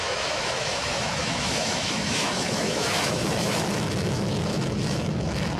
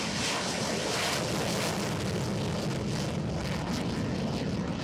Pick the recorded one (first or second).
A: second